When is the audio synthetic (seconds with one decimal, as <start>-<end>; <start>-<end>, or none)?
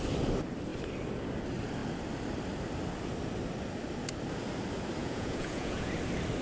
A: 5.0-5.9